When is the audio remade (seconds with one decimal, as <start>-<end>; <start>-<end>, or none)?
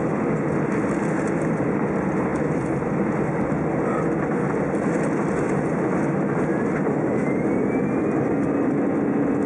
none